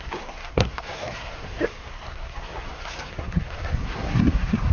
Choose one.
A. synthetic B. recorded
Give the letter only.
A